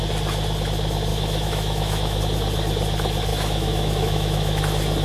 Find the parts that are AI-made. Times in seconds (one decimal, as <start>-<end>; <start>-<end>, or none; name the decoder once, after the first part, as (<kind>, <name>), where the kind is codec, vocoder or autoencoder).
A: 1.1-2.2 (autoencoder, DAC-VAE); 3.3-4.6